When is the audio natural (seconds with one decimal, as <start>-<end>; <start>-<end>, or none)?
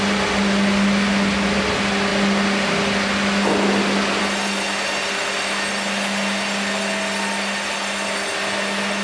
0.0-9.0